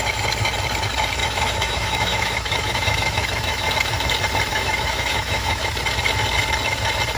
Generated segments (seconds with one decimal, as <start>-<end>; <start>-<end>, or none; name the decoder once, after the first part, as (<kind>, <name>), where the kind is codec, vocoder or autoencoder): 1.2-3.7 (autoencoder, DAC-VAE); 4.5-5.6